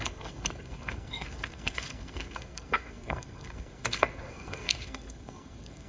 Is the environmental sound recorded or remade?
remade